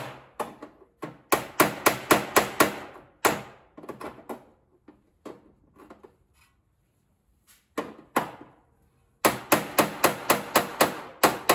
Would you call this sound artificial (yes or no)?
no